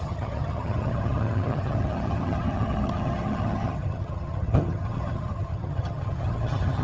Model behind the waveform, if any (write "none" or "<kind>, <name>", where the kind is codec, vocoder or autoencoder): vocoder, HiFi-GAN